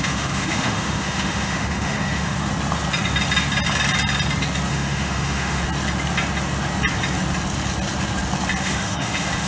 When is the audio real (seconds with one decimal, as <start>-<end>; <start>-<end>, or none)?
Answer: 2.5-4.7; 5.6-8.6